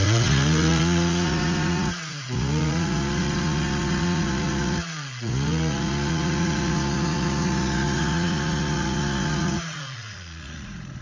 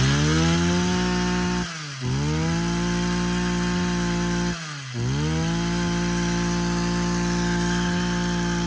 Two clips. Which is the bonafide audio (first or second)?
second